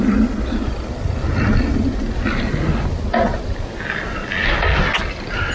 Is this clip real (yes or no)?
yes